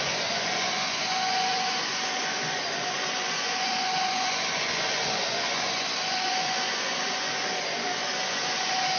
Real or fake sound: fake